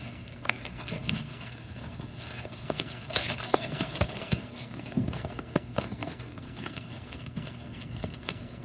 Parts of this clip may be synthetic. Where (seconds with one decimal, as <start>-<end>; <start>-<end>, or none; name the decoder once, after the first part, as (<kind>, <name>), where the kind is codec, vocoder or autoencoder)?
0.0-8.6 (codec, SNAC)

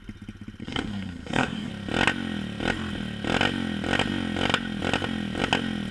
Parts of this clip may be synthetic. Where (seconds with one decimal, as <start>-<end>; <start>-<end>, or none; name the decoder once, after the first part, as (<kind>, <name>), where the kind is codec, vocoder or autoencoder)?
0.6-1.7 (codec, SNAC)

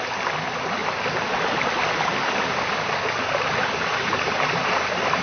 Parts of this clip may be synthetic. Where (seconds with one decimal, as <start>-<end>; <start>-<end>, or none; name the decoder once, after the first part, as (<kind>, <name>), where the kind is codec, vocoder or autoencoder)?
none

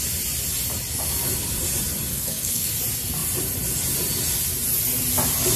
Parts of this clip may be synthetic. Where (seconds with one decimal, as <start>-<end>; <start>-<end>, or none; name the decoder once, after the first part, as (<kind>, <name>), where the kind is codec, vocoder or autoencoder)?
2.1-2.7 (codec, SNAC)

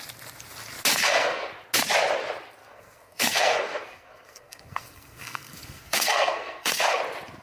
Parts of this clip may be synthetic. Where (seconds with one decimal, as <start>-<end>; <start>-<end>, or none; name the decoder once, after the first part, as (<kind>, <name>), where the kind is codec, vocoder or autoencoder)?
0.9-1.5 (codec, SNAC); 2.6-7.0